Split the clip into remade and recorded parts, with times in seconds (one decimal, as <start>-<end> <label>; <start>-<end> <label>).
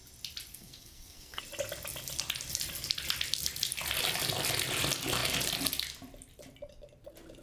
0.0-0.5 recorded; 0.5-1.4 remade; 1.4-7.4 recorded